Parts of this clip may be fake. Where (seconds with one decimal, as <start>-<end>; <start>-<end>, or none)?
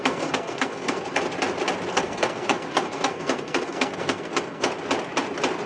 0.0-1.2; 1.9-4.7